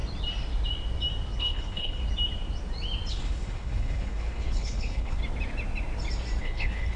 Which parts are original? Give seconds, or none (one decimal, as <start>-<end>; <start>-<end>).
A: 0.0-1.4; 2.0-3.1; 5.2-6.4